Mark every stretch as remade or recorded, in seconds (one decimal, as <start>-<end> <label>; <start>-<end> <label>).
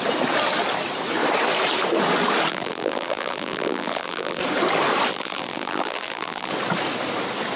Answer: 0.0-2.5 recorded; 2.5-4.4 remade; 4.4-5.1 recorded; 5.1-6.5 remade; 6.5-7.6 recorded